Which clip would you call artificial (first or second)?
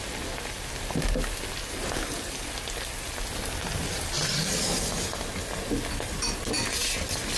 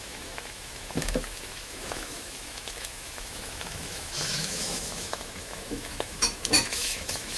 second